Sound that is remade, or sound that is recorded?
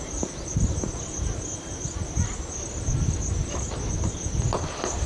recorded